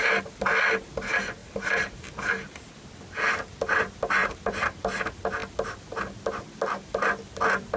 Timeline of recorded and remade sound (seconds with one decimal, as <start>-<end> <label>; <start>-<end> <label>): 0.0-1.4 recorded; 1.4-2.8 remade; 2.8-4.2 recorded; 4.2-4.8 remade; 4.8-7.8 recorded